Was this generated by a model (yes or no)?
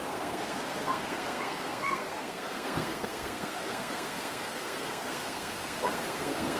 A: yes